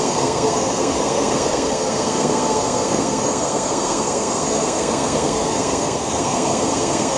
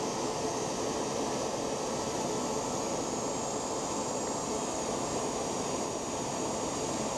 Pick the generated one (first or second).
first